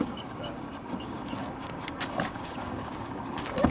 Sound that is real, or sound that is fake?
fake